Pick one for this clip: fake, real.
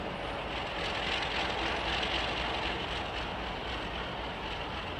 real